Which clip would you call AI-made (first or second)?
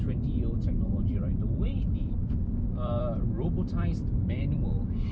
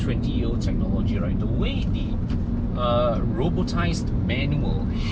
first